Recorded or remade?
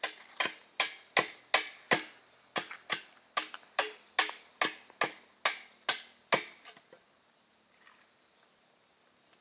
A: recorded